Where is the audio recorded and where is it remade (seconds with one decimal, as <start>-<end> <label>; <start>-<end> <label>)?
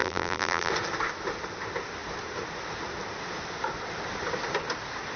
0.0-0.7 remade; 0.7-5.2 recorded